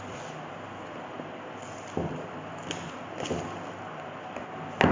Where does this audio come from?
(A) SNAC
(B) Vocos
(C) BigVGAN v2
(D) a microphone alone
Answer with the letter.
D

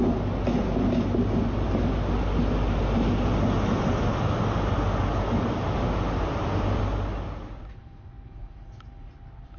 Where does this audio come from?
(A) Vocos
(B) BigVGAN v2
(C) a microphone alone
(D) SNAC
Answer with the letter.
C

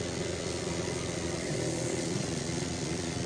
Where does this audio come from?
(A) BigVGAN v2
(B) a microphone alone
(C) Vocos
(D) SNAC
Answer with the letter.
C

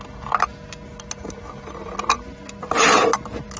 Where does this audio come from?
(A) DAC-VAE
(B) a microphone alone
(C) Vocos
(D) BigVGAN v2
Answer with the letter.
B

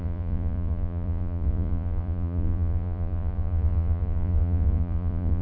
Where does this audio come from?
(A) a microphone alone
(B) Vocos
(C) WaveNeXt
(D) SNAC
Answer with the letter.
B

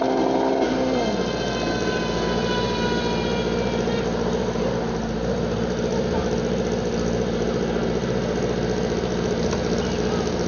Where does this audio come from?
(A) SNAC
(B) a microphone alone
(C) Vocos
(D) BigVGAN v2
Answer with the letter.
B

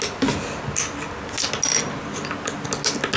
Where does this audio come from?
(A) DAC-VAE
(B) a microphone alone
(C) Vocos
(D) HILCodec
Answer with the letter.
B